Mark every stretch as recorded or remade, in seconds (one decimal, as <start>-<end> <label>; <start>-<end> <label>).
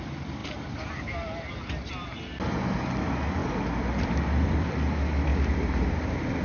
0.0-0.4 recorded; 0.4-1.5 remade; 1.5-3.4 recorded; 3.4-4.7 remade; 4.7-5.3 recorded; 5.3-6.4 remade